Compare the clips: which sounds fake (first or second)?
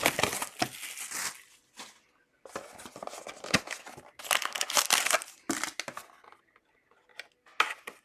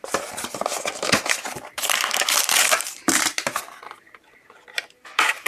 second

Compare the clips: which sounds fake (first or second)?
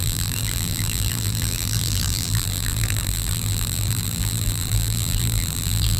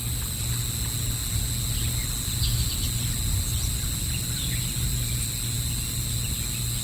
first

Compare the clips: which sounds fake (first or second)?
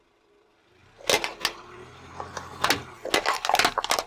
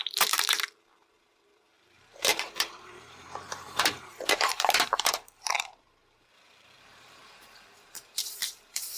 second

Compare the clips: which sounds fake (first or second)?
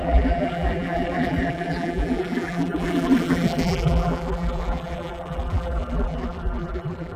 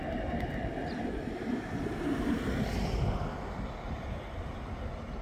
first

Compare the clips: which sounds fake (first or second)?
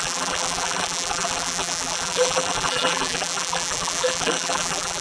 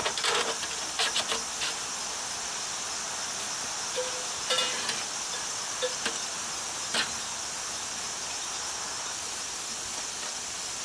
first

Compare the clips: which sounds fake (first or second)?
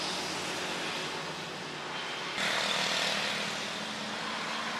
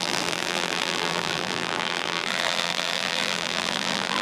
second